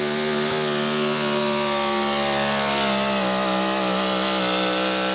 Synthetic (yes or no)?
no